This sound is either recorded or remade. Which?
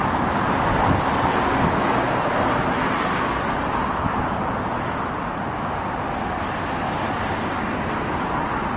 recorded